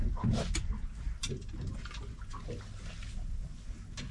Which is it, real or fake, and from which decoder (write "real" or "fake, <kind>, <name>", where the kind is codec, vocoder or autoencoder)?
real